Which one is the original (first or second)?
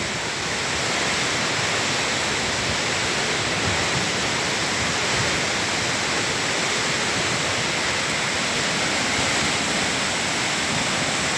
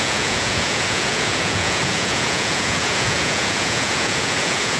first